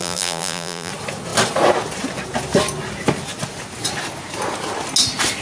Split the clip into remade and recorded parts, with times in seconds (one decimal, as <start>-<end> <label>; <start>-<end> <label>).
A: 0.0-0.9 remade; 0.9-5.4 recorded